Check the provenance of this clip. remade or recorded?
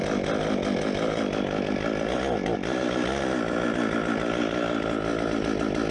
recorded